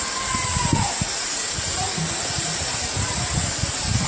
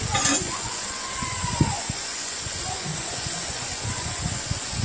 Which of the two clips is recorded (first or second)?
first